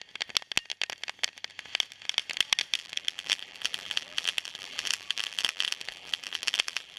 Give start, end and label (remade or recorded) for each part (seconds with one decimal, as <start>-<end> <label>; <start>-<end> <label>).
0.0-2.8 recorded; 2.8-7.0 remade